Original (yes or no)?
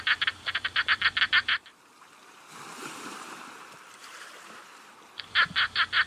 no